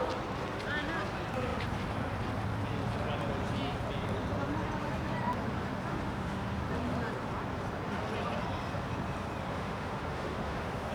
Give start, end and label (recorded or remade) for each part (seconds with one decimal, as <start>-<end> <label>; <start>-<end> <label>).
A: 0.0-5.9 recorded; 5.9-6.6 remade; 6.6-9.5 recorded; 9.5-10.9 remade